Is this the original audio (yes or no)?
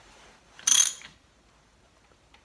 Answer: no